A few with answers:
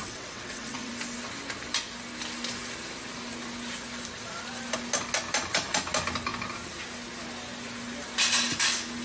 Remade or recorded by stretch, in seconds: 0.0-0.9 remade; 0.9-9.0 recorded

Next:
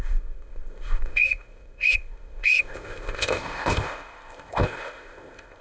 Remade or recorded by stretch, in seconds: 0.0-5.6 remade

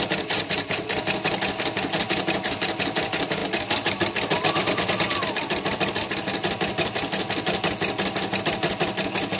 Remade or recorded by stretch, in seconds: 0.0-9.4 recorded

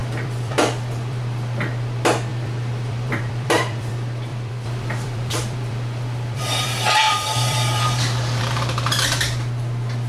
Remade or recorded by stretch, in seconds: 0.0-1.2 remade; 1.2-2.3 recorded; 2.3-3.9 remade; 3.9-4.3 recorded; 4.3-8.4 remade; 8.4-10.1 recorded

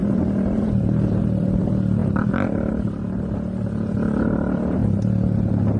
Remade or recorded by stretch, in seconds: 0.0-1.6 remade; 1.6-5.8 recorded

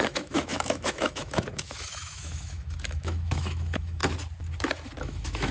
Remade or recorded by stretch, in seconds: 0.0-4.0 remade; 4.0-5.0 recorded; 5.0-5.5 remade